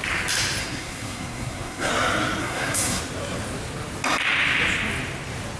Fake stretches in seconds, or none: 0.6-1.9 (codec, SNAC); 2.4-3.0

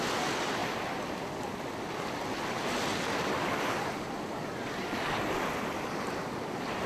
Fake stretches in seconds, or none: none

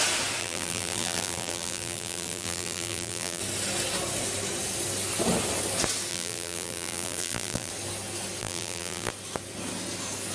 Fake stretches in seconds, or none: 0.4-3.4 (vocoder, BigVGAN v2); 6.1-7.7; 8.4-9.1

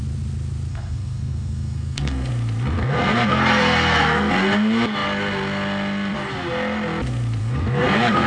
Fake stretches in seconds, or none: 0.7-2.3 (codec, SNAC); 2.8-4.3; 7.4-8.3

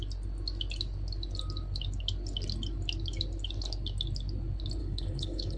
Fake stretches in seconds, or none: 4.8-5.6 (codec, HILCodec)

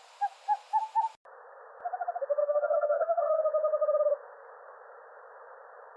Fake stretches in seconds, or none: 2.4-3.4 (codec, DAC)

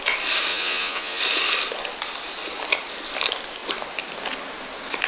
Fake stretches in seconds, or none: 0.5-1.2 (vocoder, Vocos)

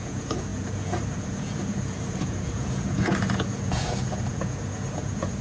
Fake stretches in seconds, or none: 0.0-5.4 (vocoder, Vocos)